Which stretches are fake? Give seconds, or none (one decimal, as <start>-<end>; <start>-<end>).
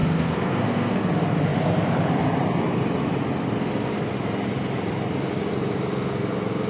0.0-1.1